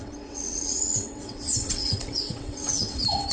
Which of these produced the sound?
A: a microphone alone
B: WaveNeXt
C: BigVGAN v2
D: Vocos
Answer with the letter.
B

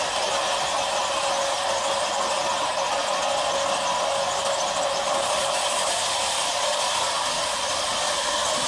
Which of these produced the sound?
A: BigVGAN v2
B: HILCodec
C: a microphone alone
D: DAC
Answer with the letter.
C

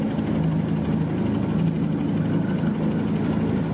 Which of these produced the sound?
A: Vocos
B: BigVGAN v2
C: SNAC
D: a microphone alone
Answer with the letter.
D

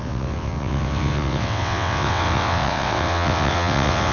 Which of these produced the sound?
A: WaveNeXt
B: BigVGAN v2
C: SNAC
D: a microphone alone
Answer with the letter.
A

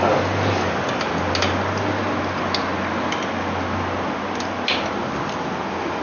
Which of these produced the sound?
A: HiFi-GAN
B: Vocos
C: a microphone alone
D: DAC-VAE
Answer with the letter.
C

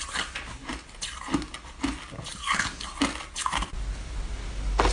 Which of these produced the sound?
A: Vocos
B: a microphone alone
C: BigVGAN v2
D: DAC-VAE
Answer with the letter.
B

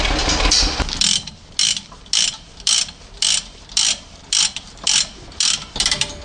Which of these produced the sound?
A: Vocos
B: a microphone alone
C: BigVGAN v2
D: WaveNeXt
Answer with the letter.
B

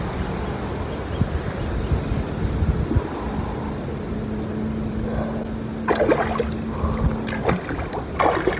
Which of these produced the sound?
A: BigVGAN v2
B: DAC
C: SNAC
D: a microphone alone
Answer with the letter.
D